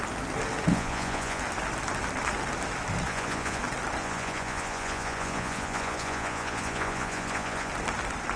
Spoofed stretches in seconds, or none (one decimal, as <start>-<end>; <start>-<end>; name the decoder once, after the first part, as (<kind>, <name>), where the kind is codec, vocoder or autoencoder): 0.7-1.4 (vocoder, Vocos); 3.1-3.6; 4.0-7.7